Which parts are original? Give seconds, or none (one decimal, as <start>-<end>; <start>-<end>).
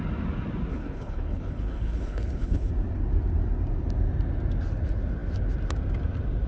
0.0-0.7; 2.7-6.5